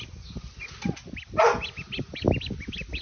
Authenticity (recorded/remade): recorded